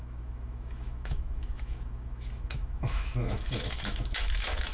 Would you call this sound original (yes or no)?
no